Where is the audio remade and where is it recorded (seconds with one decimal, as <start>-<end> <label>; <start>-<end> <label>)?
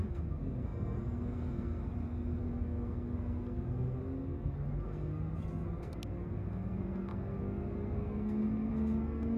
0.0-9.4 remade